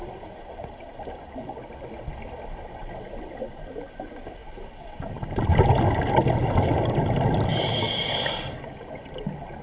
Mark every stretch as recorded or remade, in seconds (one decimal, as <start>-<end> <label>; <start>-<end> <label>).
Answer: 0.0-9.6 recorded